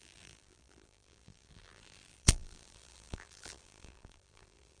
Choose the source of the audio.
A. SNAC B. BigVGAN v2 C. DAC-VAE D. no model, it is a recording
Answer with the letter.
B